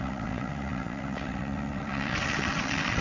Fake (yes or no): yes